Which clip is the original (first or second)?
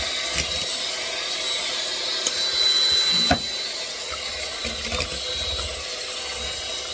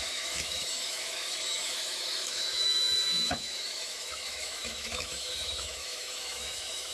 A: first